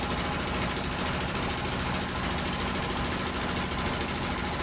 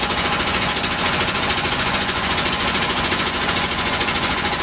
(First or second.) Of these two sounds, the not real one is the second